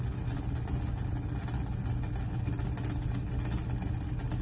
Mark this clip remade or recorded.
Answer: recorded